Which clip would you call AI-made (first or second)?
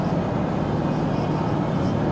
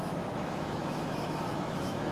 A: second